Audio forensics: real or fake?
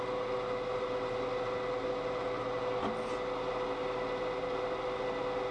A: real